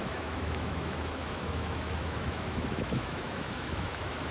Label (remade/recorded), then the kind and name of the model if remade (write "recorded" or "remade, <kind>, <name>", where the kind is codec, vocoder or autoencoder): remade, autoencoder, DAC-VAE